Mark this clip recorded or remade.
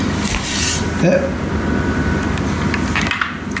recorded